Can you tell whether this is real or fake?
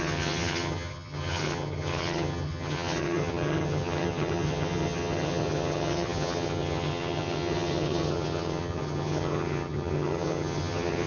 fake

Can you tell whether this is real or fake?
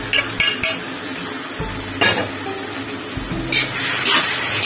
real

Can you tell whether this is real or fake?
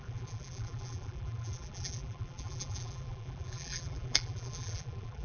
fake